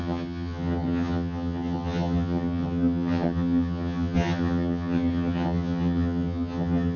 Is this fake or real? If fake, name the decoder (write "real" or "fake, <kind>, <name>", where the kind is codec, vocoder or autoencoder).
fake, vocoder, HiFi-GAN